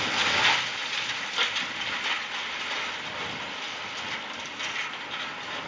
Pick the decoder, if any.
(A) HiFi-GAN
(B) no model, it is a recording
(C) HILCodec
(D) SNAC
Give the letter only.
B